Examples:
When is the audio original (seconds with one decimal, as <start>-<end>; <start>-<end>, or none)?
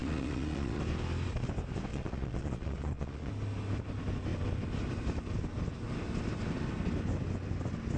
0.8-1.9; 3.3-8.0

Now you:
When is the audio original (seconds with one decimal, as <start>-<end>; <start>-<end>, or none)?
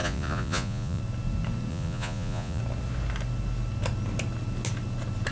1.0-1.7; 2.6-5.3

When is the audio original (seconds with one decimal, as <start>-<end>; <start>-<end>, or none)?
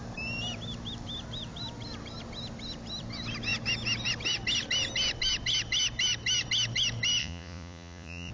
0.0-7.2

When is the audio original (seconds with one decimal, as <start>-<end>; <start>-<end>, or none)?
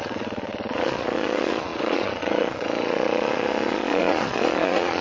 none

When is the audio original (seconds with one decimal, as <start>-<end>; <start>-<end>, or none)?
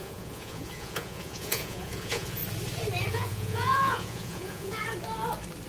2.4-3.1; 4.8-5.7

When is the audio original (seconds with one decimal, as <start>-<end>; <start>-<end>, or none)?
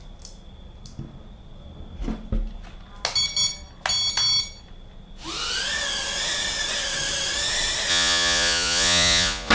0.0-7.9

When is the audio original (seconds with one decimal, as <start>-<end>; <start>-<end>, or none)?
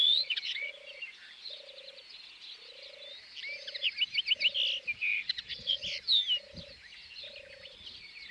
0.7-5.1; 5.8-8.3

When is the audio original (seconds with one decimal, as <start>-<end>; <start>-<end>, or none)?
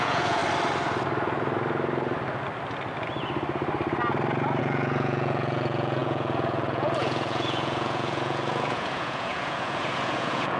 0.4-4.6